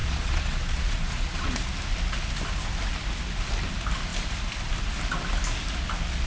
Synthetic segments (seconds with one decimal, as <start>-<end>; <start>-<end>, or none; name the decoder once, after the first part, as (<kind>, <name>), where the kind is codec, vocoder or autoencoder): 0.0-1.6 (vocoder, Vocos)